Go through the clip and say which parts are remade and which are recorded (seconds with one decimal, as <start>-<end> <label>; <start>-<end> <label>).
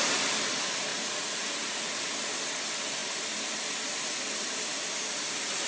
0.0-0.9 recorded; 0.9-2.1 remade; 2.1-5.7 recorded